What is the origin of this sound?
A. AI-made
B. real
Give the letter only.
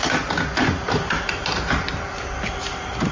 B